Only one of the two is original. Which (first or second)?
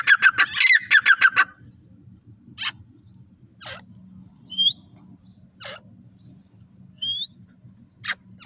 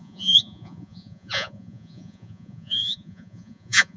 first